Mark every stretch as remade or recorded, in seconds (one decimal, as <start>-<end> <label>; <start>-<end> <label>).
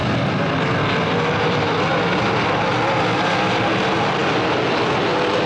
0.0-5.5 recorded